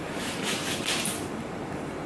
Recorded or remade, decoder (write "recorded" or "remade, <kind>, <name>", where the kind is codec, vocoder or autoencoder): remade, vocoder, BigVGAN v2